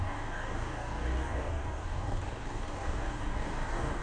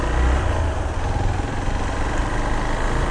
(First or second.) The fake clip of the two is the first